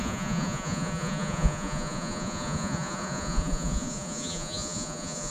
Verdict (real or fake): fake